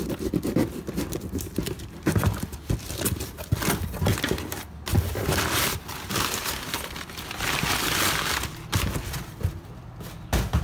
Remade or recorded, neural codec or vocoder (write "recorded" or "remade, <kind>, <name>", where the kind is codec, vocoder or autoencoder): recorded